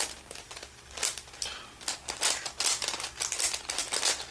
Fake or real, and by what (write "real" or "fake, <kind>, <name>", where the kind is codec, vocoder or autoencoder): real